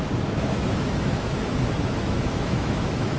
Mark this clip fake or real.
fake